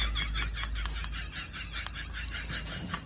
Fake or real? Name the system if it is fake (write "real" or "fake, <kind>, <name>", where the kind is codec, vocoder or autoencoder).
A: real